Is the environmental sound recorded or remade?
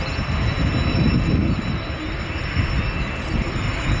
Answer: recorded